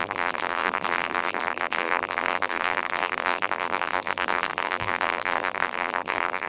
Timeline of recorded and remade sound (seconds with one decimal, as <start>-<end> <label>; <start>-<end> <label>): 0.0-6.5 remade